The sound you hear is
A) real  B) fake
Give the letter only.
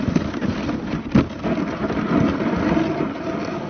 A